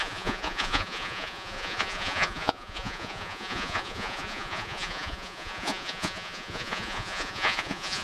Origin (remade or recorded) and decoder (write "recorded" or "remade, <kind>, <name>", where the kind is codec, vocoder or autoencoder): remade, vocoder, Vocos